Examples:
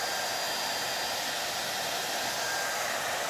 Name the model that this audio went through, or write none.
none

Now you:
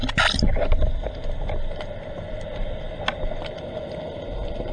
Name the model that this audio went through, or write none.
none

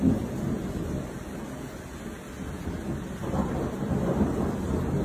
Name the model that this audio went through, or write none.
none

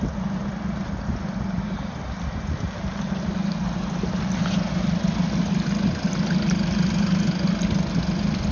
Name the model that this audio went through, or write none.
none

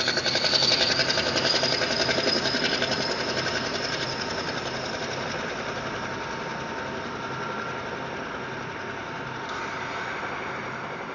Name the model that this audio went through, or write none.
none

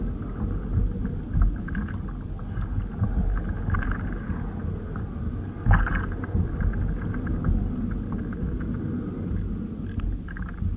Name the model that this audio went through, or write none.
none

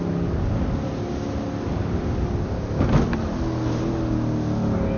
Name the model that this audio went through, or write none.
none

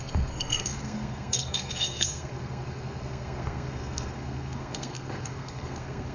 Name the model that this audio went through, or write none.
codec, SNAC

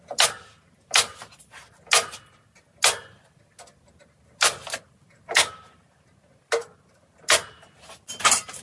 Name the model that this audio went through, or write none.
none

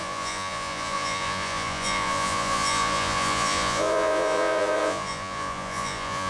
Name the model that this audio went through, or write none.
vocoder, Vocos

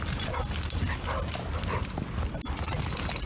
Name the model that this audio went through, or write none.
none